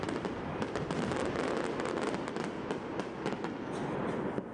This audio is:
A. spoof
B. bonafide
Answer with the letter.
B